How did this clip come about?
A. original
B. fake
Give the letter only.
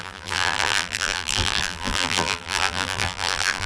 B